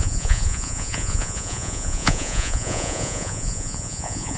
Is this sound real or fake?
fake